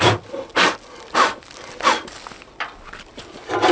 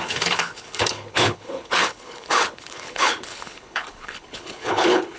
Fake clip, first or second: second